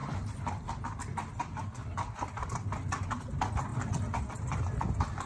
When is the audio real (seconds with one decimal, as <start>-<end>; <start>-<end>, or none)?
0.0-5.3